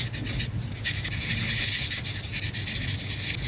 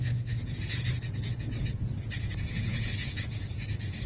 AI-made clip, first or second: second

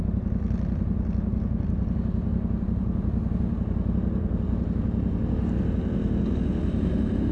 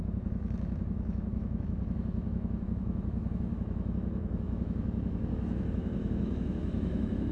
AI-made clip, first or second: second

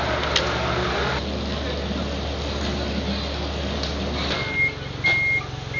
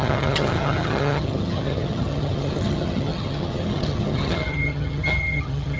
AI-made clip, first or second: second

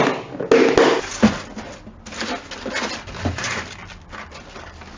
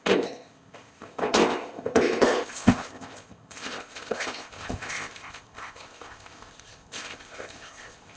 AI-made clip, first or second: second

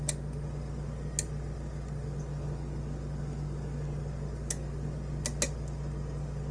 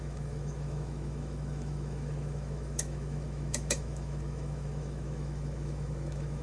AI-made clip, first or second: second